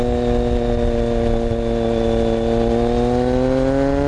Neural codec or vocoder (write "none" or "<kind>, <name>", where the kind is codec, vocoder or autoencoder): none